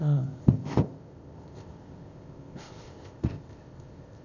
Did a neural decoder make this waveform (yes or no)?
yes